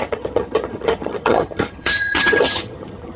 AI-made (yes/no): yes